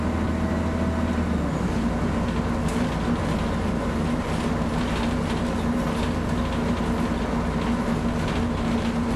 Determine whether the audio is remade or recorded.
recorded